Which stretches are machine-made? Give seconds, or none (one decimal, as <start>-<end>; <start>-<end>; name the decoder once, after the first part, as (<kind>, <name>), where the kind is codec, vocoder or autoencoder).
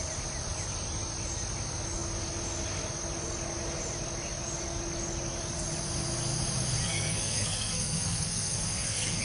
6.8-9.2 (codec, SNAC)